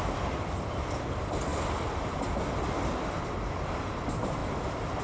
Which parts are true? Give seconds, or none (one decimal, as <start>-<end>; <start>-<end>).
0.0-1.5; 3.2-4.4